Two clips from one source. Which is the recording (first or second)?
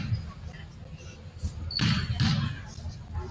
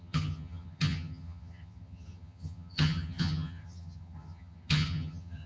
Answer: first